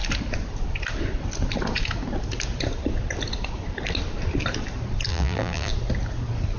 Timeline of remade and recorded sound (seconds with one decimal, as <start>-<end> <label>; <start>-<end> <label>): 0.0-5.1 recorded; 5.1-5.7 remade; 5.7-6.6 recorded